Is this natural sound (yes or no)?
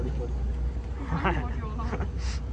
yes